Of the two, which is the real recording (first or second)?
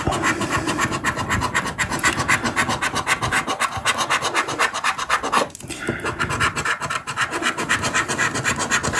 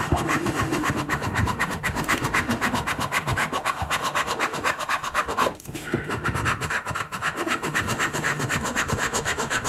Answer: first